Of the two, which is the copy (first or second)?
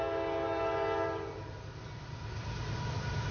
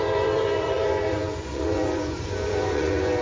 second